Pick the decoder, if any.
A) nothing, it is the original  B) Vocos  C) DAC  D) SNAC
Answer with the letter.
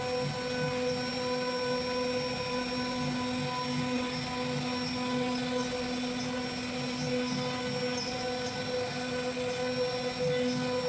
A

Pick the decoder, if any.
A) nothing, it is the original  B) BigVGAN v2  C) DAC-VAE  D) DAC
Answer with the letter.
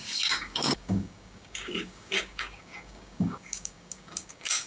D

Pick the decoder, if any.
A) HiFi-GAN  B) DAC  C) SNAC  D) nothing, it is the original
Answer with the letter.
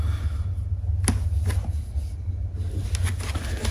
D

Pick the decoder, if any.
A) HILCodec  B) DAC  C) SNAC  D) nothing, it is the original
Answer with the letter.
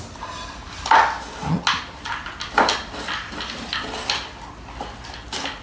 D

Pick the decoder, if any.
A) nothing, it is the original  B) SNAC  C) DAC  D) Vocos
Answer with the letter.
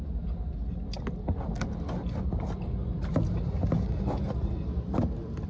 A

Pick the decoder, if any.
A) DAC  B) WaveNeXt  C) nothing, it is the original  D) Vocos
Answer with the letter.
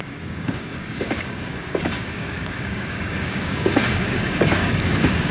A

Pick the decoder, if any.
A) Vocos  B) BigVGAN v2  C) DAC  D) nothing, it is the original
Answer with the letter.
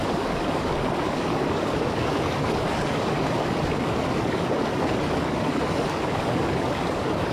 C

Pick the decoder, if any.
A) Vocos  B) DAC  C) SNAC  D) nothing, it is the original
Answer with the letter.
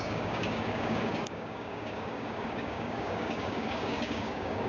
B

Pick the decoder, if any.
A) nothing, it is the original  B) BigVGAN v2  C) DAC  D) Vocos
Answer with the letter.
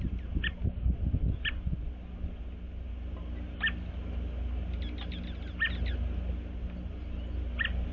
A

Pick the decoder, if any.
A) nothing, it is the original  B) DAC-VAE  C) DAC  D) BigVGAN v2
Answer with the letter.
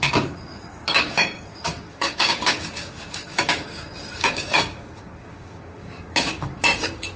C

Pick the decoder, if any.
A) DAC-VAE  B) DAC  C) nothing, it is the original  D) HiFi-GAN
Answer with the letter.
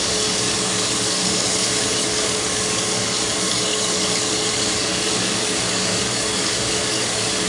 B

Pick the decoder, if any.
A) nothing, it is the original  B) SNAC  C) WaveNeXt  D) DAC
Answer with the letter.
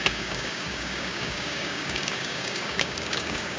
D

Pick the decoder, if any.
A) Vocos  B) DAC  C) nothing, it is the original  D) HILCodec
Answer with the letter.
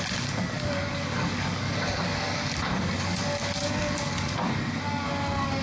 B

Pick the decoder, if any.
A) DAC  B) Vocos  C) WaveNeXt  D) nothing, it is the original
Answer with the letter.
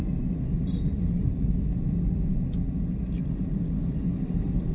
D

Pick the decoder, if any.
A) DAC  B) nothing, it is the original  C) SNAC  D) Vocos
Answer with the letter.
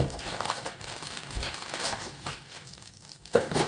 A